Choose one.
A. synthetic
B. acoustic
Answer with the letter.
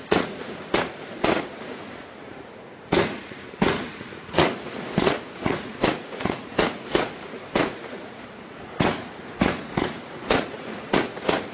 A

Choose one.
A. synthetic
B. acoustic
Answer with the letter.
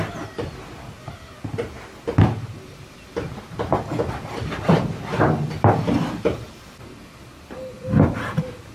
B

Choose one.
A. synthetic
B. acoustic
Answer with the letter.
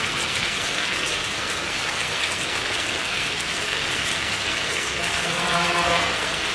A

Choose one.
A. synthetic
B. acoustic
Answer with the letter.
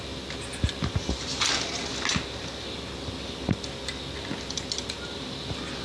B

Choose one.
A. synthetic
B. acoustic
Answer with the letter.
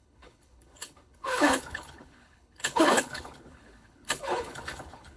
A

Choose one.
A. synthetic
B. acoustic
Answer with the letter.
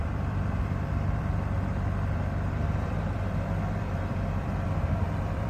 A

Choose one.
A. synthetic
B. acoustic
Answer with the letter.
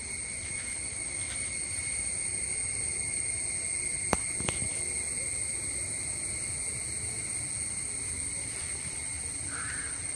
B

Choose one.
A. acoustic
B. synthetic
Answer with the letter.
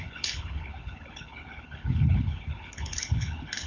B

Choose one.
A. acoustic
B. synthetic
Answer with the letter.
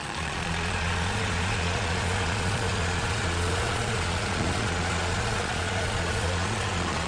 B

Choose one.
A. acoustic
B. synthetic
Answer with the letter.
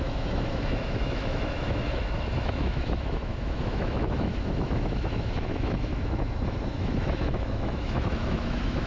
B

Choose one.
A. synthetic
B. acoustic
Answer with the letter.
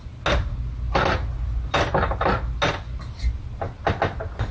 B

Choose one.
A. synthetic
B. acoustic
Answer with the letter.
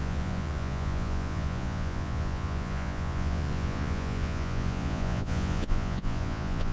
A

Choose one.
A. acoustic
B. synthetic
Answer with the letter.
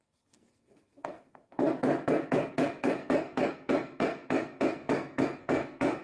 B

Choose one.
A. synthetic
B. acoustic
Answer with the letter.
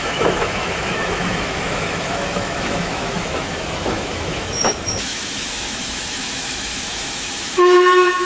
A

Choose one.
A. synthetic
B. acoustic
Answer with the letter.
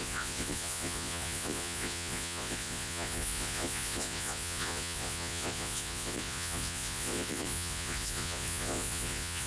A